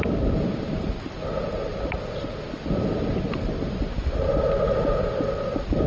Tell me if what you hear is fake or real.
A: real